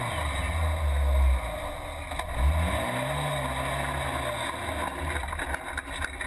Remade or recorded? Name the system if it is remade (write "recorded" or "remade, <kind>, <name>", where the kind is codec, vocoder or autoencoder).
recorded